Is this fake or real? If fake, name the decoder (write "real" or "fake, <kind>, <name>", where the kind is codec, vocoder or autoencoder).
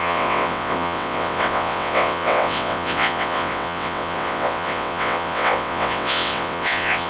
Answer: fake, vocoder, WaveNeXt